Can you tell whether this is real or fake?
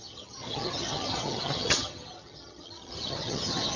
fake